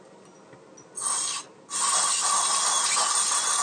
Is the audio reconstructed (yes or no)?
no